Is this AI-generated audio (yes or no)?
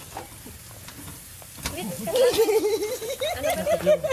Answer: yes